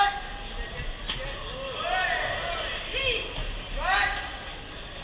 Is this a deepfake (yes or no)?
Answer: no